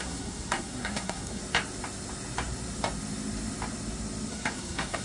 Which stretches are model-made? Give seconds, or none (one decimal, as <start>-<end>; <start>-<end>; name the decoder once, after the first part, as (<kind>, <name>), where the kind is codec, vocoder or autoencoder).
0.0-1.4 (codec, SNAC); 4.3-5.0